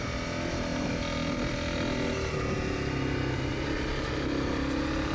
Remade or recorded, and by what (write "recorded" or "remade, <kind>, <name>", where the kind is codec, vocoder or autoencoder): recorded